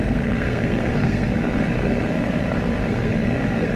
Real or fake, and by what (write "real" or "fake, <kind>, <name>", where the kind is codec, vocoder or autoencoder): fake, codec, SNAC